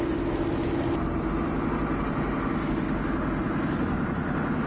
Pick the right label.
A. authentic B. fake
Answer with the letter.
A